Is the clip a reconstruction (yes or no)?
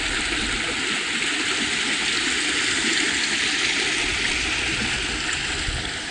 no